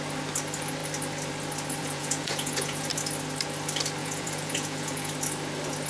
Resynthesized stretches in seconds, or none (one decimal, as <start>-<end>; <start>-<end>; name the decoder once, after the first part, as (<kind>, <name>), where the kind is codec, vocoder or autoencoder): 1.8-2.9 (vocoder, Vocos); 4.0-5.1

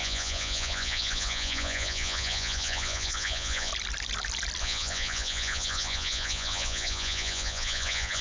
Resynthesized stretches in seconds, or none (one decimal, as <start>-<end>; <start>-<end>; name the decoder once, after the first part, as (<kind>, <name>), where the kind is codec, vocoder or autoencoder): 0.0-3.7 (vocoder, Vocos); 4.6-8.2

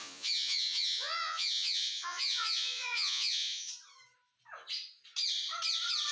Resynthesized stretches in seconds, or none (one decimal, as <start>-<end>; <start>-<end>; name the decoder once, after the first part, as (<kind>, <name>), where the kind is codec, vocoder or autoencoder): 0.0-3.7 (vocoder, Vocos)

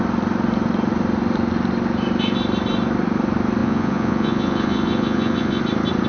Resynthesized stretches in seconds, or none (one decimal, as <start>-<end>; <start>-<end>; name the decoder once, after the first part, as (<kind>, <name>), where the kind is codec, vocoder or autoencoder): 3.6-5.6 (vocoder, Vocos)

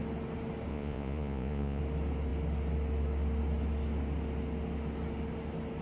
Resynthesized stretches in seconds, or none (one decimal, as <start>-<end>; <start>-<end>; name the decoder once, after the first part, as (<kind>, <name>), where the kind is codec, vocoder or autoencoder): 0.7-1.8 (vocoder, Vocos)

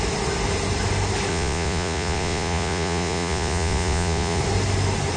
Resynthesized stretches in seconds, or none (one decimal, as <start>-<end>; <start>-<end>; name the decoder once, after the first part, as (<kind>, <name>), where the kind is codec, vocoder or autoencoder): 1.3-4.4 (vocoder, Vocos)